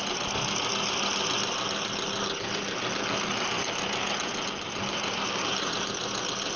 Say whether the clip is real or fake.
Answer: real